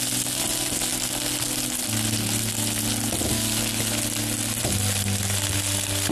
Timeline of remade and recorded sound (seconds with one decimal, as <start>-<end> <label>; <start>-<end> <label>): 0.0-6.1 recorded